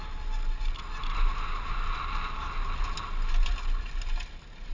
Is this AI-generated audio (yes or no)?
no